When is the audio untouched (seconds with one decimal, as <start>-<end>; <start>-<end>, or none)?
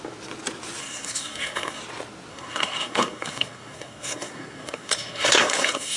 0.0-0.8; 1.8-2.3